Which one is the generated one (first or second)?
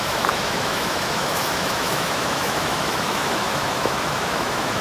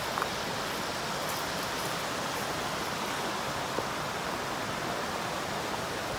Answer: first